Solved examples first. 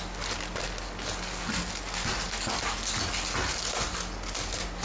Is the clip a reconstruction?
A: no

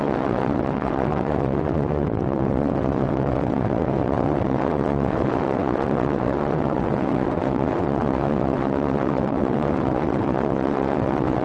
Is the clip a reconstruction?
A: yes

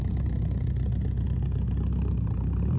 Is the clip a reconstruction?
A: no